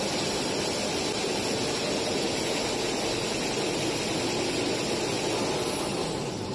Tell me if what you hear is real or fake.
real